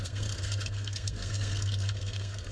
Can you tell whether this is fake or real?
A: fake